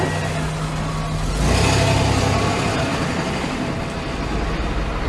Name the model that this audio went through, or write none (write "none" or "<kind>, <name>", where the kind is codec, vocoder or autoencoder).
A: none